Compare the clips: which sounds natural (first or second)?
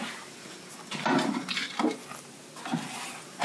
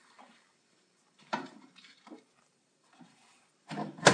first